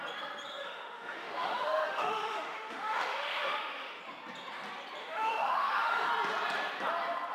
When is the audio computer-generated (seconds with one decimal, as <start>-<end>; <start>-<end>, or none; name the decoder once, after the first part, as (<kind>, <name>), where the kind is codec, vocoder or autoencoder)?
0.6-4.0 (autoencoder, DAC-VAE); 5.0-6.1